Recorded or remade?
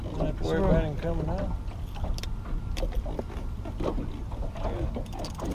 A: recorded